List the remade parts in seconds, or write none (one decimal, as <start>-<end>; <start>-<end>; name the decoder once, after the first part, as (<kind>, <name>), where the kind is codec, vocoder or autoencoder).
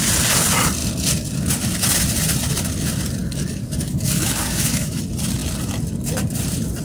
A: 3.2-5.0 (codec, DAC)